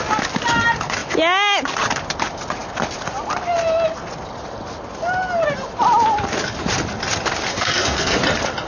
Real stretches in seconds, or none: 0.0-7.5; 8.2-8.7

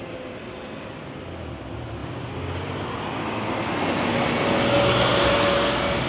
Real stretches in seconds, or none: 0.0-6.1

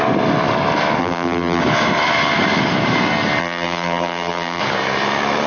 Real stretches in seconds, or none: 0.0-1.0; 1.6-3.4; 4.6-5.5

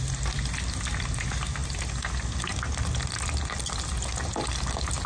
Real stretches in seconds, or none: 0.0-5.1